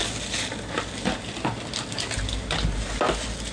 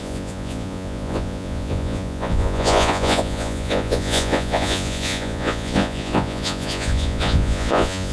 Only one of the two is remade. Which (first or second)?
second